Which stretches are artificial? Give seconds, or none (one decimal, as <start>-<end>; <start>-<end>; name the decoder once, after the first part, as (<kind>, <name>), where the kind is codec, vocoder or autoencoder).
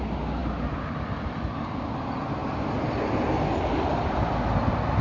none